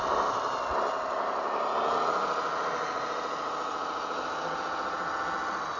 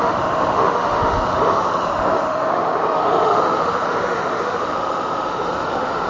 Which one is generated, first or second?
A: second